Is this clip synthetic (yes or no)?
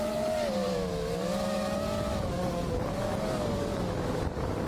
yes